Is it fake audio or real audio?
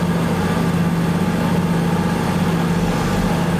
real